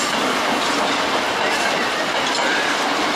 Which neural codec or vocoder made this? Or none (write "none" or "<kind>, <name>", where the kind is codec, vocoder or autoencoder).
vocoder, BigVGAN v2